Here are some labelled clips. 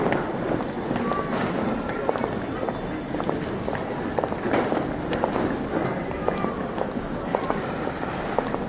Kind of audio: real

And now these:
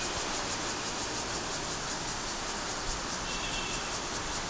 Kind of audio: real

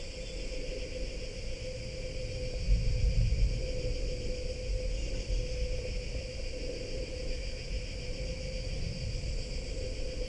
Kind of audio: real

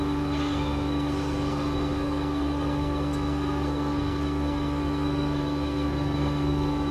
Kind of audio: fake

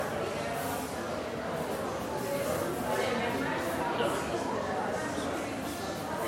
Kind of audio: real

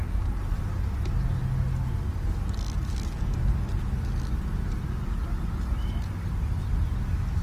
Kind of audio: real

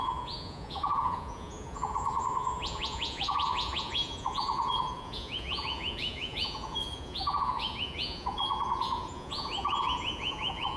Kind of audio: fake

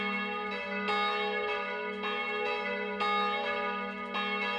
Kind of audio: real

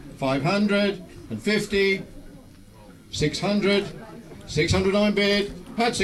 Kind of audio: real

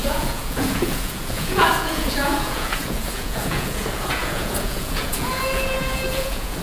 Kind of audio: fake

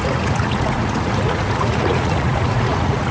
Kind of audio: fake